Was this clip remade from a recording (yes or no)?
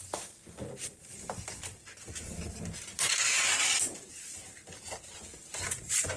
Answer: no